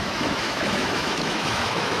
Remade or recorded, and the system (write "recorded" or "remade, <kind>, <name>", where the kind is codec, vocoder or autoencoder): remade, autoencoder, DAC-VAE